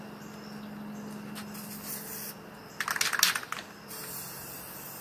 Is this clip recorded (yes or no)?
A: yes